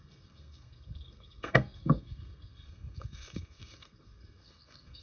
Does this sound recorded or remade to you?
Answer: remade